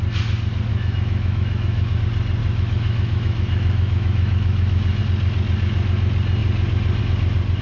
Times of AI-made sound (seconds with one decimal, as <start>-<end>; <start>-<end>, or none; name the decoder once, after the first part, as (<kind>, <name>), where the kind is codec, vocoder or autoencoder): 0.7-2.0 (autoencoder, DAC-VAE); 2.4-5.0